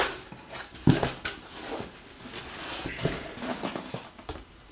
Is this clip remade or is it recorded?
recorded